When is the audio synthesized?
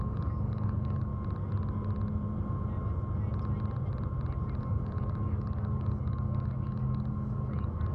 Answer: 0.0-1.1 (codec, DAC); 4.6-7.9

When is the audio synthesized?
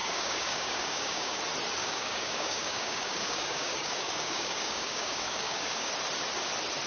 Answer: 0.0-1.4 (codec, DAC); 1.8-5.9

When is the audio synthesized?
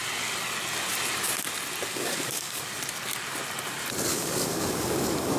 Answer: 1.9-2.6 (codec, DAC); 4.1-5.4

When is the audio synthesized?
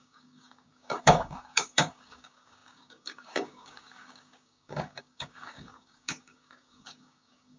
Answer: 0.0-7.6 (codec, DAC)